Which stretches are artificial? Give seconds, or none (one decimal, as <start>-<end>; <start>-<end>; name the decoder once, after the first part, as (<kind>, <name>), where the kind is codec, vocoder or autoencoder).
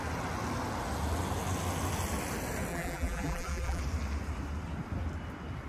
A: 2.7-3.8 (vocoder, BigVGAN v2)